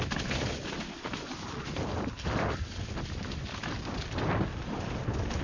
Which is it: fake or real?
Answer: real